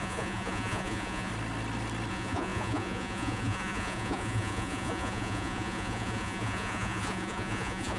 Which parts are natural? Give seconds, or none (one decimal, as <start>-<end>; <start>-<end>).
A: 1.3-2.1